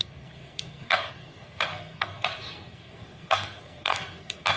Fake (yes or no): yes